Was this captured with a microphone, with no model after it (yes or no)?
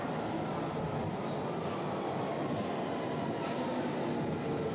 yes